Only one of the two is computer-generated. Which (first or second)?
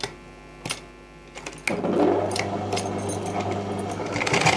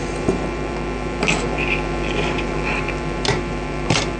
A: second